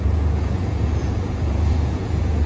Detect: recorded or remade remade